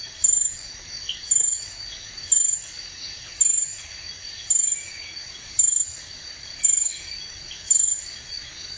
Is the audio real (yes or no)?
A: no